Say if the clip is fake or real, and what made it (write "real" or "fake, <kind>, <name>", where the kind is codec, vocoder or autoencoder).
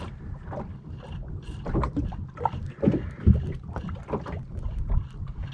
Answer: real